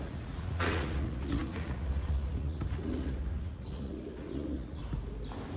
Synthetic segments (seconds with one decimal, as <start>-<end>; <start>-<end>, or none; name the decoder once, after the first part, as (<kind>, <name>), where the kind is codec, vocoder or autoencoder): 0.0-4.8 (vocoder, Vocos)